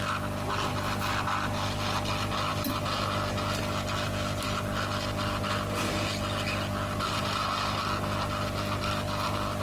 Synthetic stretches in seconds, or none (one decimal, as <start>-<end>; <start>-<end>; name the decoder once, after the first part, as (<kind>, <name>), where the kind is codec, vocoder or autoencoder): none